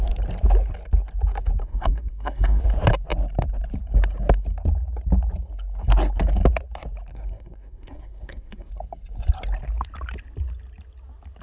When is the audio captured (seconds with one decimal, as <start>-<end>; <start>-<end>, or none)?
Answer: 0.0-1.6; 2.6-7.1; 8.7-11.4